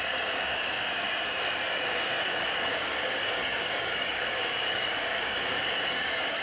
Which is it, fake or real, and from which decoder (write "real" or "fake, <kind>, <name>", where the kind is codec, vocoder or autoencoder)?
fake, codec, DAC